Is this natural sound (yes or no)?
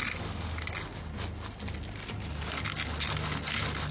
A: yes